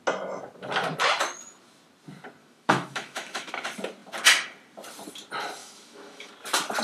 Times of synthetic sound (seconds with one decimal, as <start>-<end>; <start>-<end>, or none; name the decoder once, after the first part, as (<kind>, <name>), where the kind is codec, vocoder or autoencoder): 2.4-3.5 (autoencoder, DAC-VAE); 5.6-6.3